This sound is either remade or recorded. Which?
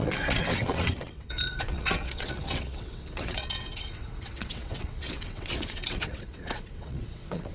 remade